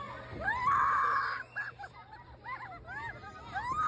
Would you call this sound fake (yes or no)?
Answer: no